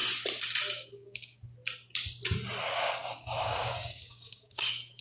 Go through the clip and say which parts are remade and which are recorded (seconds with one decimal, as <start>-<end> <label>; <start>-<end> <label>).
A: 0.0-0.7 recorded; 0.7-1.4 remade; 1.4-2.6 recorded; 2.6-5.0 remade